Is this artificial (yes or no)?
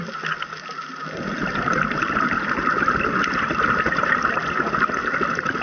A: no